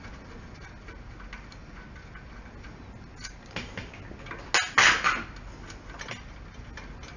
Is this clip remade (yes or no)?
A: no